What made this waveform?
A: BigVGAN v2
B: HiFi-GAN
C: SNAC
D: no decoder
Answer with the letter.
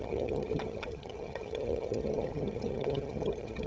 B